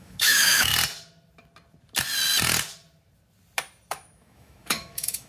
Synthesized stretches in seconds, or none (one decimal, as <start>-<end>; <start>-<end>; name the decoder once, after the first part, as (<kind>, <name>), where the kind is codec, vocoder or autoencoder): 0.0-0.7 (autoencoder, DAC-VAE); 3.9-5.3